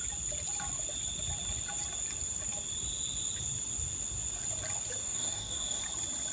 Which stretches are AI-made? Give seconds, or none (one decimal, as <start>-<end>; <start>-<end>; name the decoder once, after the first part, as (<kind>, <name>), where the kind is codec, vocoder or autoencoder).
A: 5.0-5.8 (codec, DAC)